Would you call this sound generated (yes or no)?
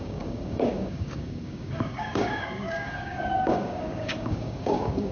yes